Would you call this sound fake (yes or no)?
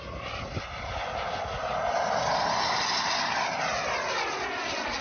no